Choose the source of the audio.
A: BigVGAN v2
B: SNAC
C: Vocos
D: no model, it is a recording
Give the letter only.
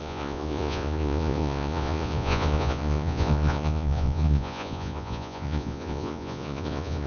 C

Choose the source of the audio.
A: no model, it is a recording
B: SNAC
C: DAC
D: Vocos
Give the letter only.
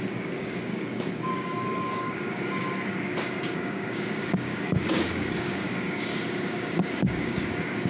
C